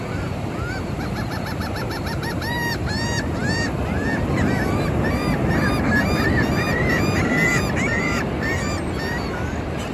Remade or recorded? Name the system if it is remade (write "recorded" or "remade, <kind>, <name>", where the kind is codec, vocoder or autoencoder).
remade, vocoder, BigVGAN v2